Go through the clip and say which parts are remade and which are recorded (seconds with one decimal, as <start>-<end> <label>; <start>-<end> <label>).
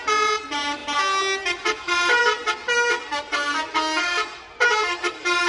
0.0-4.8 recorded; 4.8-5.5 remade